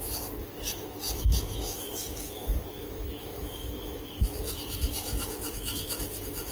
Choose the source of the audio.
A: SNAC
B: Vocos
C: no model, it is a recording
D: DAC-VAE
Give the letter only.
D